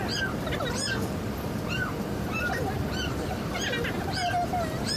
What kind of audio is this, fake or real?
real